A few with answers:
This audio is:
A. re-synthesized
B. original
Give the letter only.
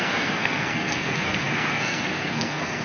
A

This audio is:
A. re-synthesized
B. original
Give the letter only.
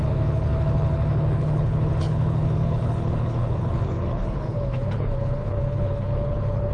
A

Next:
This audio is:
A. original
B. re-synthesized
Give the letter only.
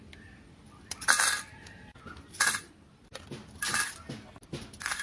A